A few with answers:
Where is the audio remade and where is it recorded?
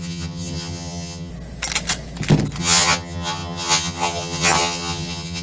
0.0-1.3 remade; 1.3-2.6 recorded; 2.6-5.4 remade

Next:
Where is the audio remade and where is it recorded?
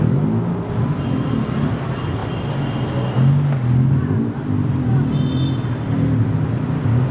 0.0-7.1 recorded